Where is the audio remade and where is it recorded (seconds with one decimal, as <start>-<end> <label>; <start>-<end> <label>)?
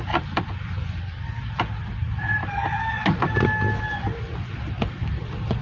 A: 0.0-5.6 recorded